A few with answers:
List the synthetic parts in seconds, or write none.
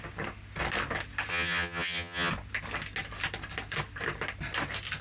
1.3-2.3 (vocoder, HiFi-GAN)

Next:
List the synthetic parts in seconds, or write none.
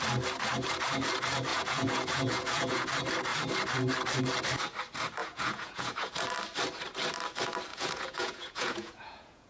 1.5-2.9 (vocoder, Vocos); 5.2-6.1; 7.7-9.5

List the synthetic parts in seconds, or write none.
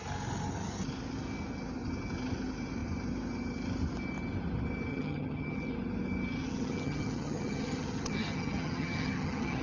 4.9-5.7 (vocoder, HiFi-GAN); 6.4-9.6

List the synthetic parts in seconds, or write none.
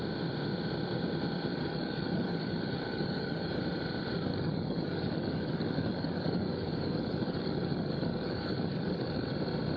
1.5-3.6 (codec, DAC); 4.3-9.3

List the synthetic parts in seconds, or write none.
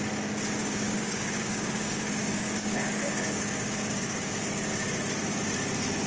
0.6-4.3 (codec, DAC)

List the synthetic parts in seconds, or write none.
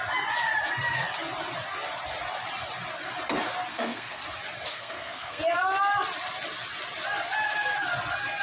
3.7-4.2 (codec, SNAC); 4.7-5.4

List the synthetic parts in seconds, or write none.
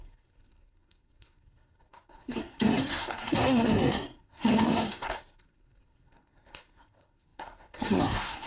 0.0-8.5 (codec, SNAC)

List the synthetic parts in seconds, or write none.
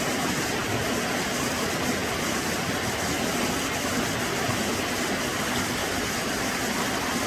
5.8-6.4 (vocoder, BigVGAN v2)